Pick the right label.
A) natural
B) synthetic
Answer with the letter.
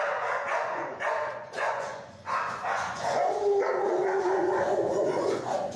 B